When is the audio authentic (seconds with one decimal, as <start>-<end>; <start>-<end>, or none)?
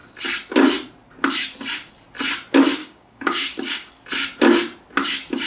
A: 0.0-2.8; 3.9-5.5